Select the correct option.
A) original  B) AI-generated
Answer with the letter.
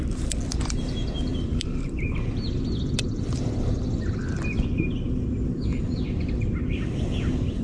A